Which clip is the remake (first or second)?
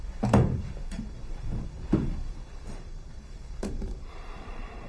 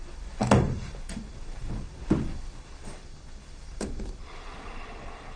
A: first